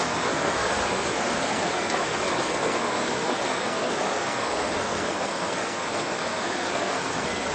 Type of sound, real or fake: fake